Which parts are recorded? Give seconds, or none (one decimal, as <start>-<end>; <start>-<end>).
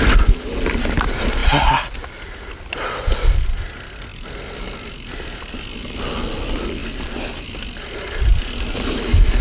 0.0-9.4